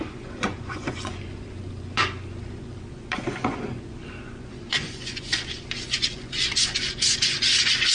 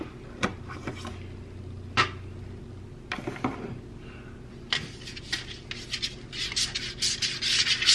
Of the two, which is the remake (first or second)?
first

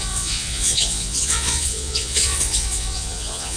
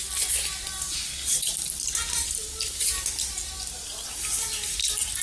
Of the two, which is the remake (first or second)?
first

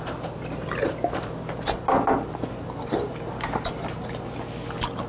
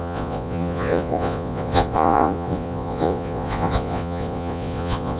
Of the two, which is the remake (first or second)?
second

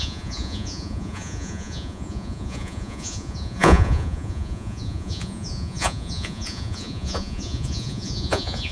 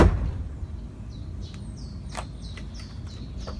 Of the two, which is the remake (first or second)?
first